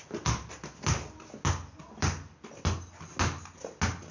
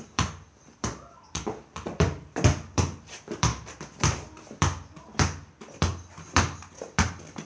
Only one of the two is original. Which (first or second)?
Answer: first